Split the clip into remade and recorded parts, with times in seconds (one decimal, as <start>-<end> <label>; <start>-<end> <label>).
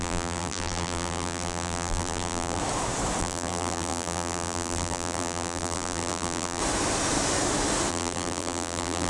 0.0-2.6 remade; 2.6-3.2 recorded; 3.2-6.6 remade; 6.6-7.9 recorded; 7.9-9.1 remade